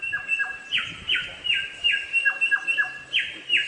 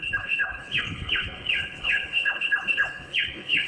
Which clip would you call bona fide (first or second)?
first